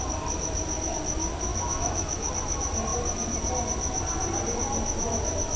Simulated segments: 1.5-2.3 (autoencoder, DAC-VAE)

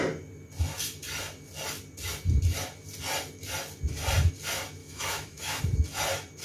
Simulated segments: 4.8-5.6 (autoencoder, DAC-VAE)

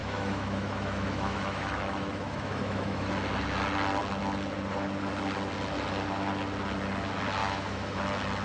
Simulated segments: 0.0-3.1 (autoencoder, DAC-VAE); 7.4-8.0